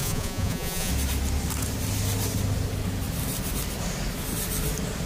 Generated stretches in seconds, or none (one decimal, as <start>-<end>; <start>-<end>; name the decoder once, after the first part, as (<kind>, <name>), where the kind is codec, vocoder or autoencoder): 0.0-0.9 (vocoder, Vocos)